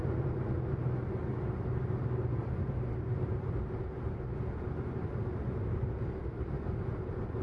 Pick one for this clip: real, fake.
real